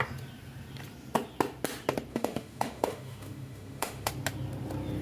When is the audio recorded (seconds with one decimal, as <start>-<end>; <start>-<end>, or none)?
0.0-2.1; 4.1-5.0